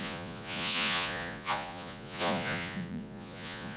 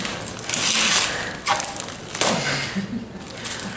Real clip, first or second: second